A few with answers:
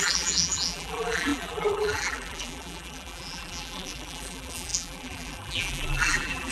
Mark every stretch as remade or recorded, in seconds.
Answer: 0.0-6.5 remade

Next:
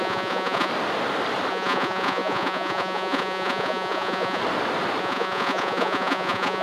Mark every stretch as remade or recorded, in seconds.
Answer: 0.0-0.7 remade; 0.7-1.5 recorded; 1.5-4.4 remade; 4.4-5.0 recorded; 5.0-6.6 remade